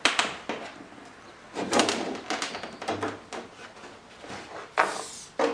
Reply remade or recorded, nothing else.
recorded